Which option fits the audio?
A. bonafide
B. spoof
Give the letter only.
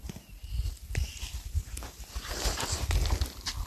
A